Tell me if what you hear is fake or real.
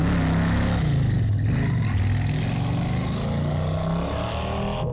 real